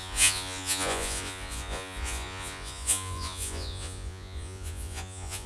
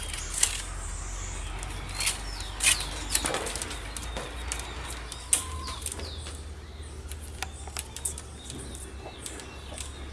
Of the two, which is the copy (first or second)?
first